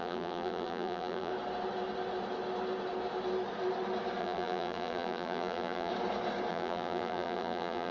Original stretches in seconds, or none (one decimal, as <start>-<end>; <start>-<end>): 1.3-4.2; 5.9-6.5